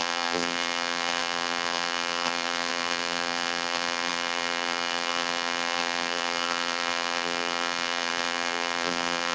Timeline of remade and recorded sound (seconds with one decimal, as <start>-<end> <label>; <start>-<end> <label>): 0.0-9.3 remade